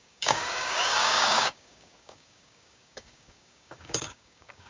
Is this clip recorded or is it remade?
remade